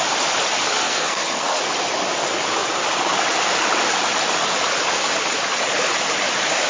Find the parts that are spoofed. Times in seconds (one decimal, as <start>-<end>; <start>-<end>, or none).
0.8-1.6